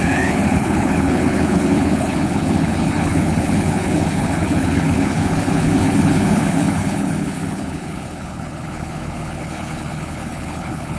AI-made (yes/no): yes